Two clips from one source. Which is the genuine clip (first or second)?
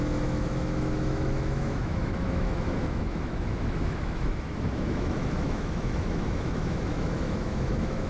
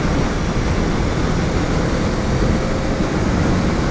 second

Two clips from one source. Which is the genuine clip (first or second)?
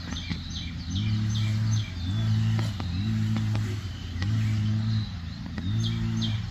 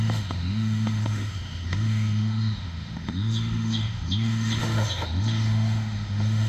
first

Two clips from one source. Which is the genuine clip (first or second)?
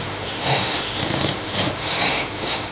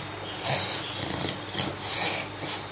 second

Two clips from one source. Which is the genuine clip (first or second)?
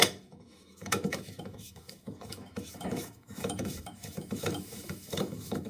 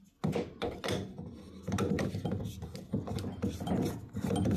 second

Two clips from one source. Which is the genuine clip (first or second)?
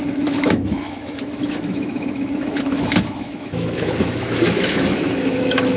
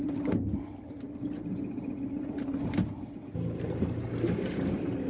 second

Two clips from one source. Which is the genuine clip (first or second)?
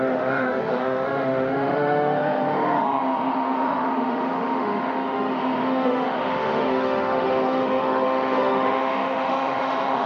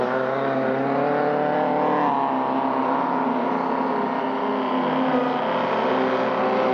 second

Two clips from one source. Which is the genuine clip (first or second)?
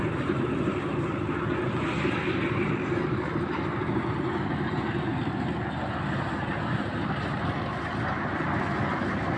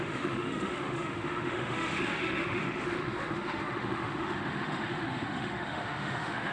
first